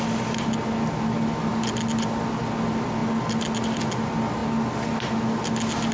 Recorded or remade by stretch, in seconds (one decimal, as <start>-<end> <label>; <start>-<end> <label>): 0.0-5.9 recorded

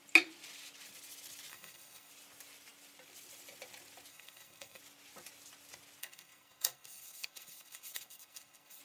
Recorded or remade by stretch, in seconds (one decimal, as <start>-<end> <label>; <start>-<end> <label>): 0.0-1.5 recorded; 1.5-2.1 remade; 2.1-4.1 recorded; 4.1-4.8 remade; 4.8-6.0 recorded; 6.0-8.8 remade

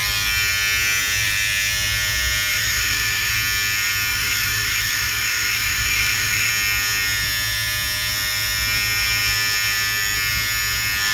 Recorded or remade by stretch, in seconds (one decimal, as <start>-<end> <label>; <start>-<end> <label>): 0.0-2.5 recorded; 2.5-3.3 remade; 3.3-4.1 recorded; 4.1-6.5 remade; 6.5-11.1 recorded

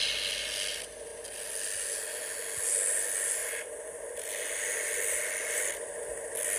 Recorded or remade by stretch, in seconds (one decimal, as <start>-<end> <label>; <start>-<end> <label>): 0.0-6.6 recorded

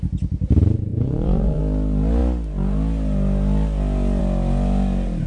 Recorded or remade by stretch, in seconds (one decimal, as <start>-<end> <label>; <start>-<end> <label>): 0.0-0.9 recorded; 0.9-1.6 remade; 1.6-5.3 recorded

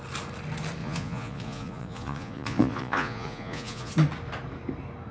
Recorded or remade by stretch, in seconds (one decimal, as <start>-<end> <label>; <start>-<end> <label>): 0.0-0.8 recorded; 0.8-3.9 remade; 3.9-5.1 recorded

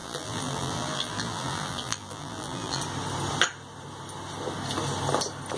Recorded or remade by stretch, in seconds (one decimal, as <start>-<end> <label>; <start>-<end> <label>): 0.0-2.8 remade; 2.8-5.6 recorded